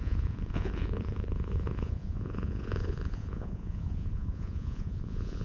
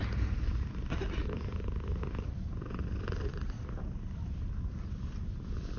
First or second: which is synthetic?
first